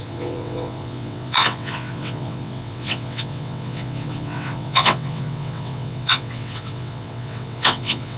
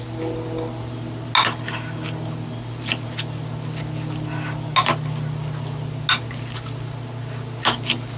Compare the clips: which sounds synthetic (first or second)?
first